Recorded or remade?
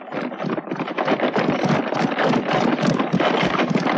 recorded